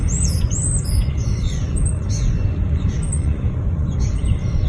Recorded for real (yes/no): no